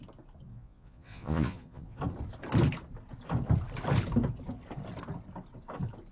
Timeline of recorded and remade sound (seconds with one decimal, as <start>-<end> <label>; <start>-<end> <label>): 0.0-0.5 recorded; 0.5-2.0 remade; 2.0-6.1 recorded